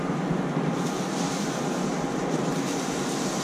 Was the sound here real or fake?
fake